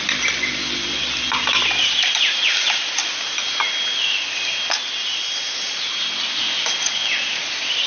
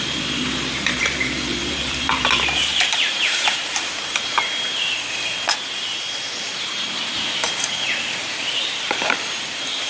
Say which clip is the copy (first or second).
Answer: second